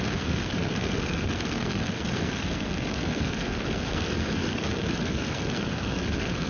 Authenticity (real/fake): fake